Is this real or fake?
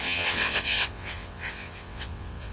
fake